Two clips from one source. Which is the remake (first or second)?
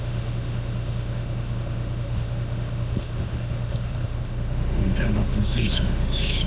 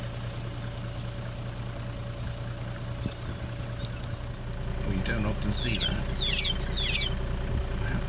first